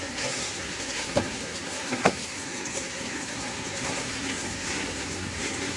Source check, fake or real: fake